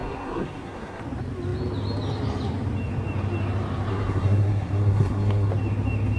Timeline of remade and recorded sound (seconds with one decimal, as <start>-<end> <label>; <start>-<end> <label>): 0.0-1.0 remade; 1.0-3.9 recorded; 3.9-5.5 remade; 5.5-6.2 recorded